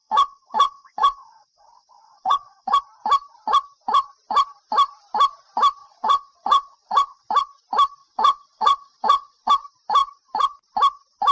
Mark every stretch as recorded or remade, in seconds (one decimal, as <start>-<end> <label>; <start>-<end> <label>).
0.0-2.8 remade; 2.8-5.8 recorded; 5.8-7.3 remade; 7.3-8.0 recorded; 8.0-9.5 remade; 9.5-11.3 recorded